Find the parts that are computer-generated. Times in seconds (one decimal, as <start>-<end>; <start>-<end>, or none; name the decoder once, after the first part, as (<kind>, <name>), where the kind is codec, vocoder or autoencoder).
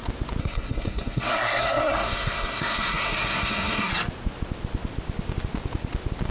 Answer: 0.4-3.9 (codec, SNAC)